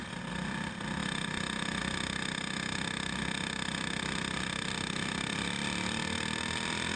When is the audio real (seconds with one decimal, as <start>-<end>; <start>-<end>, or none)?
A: 0.0-7.0